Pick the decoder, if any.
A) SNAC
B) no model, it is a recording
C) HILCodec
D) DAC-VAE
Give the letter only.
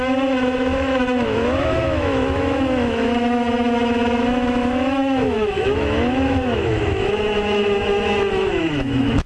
D